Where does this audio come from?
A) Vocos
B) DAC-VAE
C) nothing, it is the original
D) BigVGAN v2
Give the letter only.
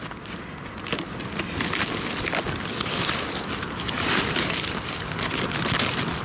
C